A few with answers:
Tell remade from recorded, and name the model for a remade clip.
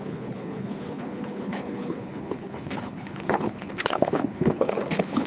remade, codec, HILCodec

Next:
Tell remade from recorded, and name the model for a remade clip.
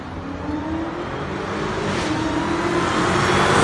recorded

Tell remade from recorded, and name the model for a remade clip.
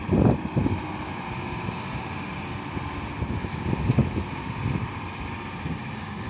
recorded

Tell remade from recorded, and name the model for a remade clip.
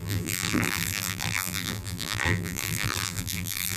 remade, vocoder, BigVGAN v2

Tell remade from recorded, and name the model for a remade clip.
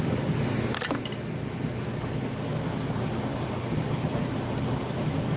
remade, vocoder, BigVGAN v2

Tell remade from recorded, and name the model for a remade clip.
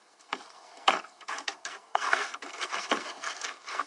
remade, codec, SNAC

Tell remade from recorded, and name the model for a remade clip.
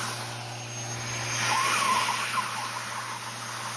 recorded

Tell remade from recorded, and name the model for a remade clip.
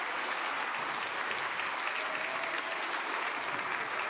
recorded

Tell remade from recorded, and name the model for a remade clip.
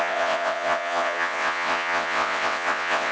remade, vocoder, WaveNeXt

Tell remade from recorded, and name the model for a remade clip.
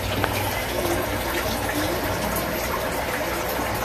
recorded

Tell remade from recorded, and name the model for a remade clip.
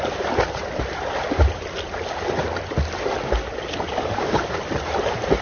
recorded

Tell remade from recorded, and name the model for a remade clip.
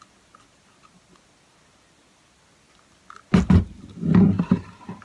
recorded